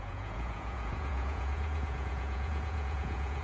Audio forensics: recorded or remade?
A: remade